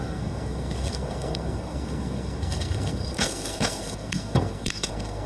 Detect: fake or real fake